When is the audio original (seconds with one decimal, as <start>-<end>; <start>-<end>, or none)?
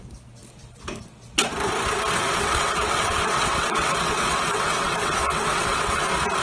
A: 0.0-2.2; 6.0-6.4